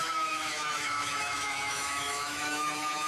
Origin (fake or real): fake